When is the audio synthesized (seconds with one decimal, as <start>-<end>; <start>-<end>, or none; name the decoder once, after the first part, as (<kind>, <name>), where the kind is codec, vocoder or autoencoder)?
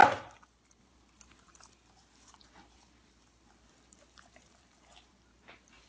0.8-5.9 (vocoder, BigVGAN v2)